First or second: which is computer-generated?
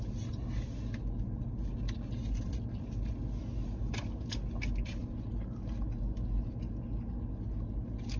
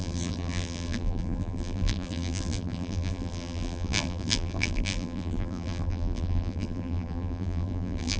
second